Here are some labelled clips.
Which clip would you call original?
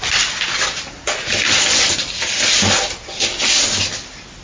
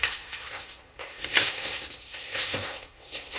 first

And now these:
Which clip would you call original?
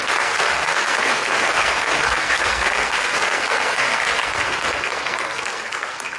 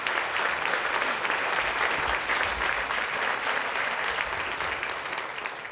second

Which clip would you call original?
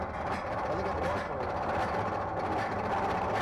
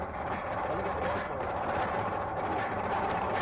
first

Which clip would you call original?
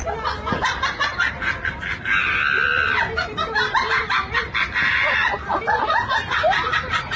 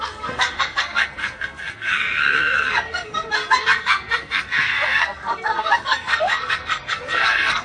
first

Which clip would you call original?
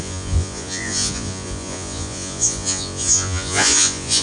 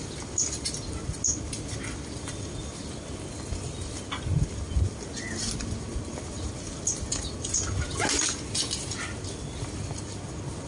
second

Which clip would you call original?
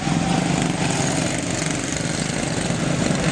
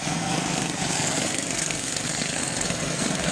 first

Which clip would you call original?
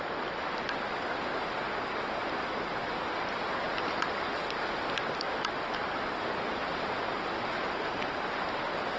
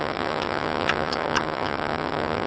first